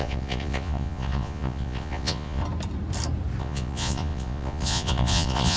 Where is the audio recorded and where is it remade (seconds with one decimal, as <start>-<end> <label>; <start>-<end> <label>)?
0.0-2.4 remade; 2.4-3.4 recorded; 3.4-5.6 remade

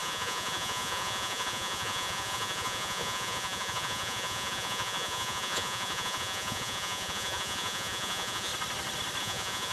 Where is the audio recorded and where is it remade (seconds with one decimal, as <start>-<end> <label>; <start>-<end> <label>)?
0.0-8.5 remade; 8.5-9.2 recorded; 9.2-9.7 remade

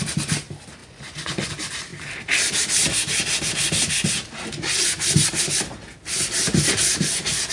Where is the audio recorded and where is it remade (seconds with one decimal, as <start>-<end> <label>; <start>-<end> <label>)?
0.0-0.8 recorded; 0.8-1.5 remade; 1.5-7.5 recorded

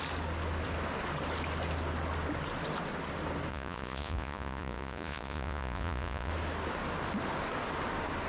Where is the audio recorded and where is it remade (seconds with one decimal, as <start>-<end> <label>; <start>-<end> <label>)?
0.0-3.5 recorded; 3.5-6.3 remade; 6.3-8.3 recorded

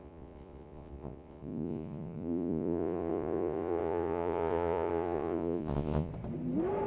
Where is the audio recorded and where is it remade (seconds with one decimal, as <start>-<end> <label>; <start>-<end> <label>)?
0.0-6.1 remade; 6.1-6.9 recorded

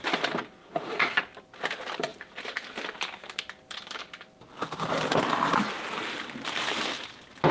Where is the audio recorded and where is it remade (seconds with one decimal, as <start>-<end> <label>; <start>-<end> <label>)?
0.0-0.6 recorded; 0.6-1.2 remade; 1.2-7.5 recorded

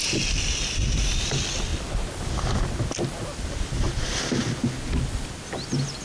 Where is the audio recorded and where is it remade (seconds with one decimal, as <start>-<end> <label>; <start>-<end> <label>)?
0.0-6.0 recorded

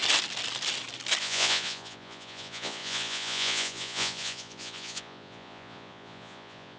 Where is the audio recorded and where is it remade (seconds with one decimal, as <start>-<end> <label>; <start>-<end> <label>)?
0.0-1.2 recorded; 1.2-6.8 remade